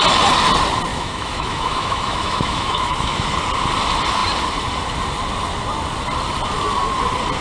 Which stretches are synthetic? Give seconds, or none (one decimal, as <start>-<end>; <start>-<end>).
0.9-3.3